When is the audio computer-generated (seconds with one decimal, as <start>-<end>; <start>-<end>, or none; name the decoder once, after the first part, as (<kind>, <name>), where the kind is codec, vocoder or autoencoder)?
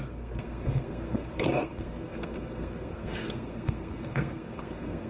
0.0-5.1 (codec, SNAC)